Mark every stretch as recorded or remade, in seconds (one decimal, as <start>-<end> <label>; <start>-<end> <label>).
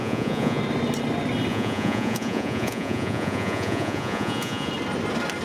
0.0-0.6 remade; 0.6-1.5 recorded; 1.5-4.7 remade; 4.7-5.4 recorded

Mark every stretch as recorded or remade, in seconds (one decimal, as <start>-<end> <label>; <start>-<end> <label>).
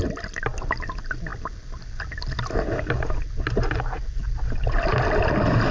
0.0-5.7 recorded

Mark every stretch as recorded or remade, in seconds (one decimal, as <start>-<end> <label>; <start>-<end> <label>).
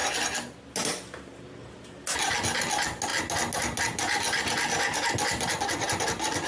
0.0-6.5 recorded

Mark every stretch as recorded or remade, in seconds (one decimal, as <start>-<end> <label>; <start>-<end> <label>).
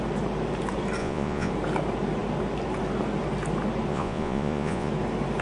0.0-1.0 recorded; 1.0-1.5 remade; 1.5-3.9 recorded; 3.9-4.9 remade; 4.9-5.4 recorded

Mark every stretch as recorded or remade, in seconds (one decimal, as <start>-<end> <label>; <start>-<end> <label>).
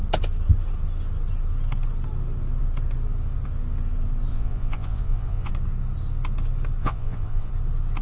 0.0-4.3 recorded; 4.3-5.5 remade; 5.5-6.8 recorded; 6.8-7.5 remade; 7.5-8.0 recorded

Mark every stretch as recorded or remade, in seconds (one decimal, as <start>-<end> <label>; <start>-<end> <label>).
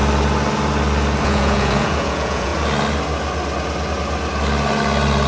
0.0-1.2 recorded; 1.2-2.5 remade; 2.5-5.3 recorded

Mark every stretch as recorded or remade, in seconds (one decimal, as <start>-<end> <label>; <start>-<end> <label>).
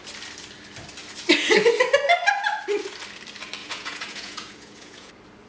0.0-3.6 recorded; 3.6-5.1 remade; 5.1-5.5 recorded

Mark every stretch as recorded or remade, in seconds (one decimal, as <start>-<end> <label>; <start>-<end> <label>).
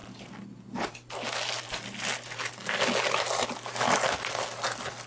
0.0-5.1 recorded